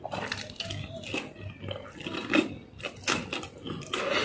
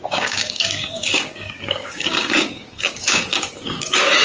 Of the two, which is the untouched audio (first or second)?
first